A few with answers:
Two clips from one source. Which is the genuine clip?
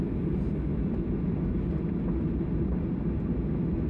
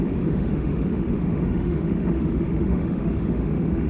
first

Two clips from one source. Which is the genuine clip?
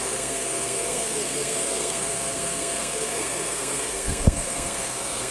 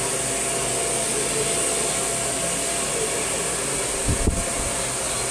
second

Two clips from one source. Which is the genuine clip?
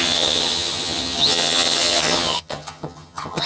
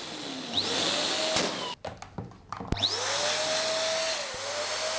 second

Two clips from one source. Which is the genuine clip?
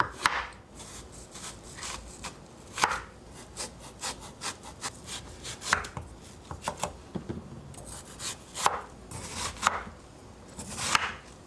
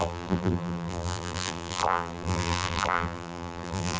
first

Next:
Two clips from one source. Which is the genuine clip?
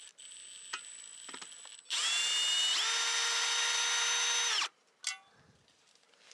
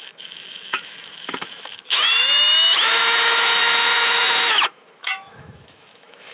first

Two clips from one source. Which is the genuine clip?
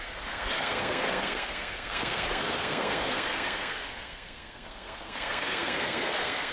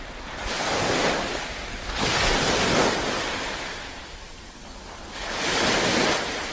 second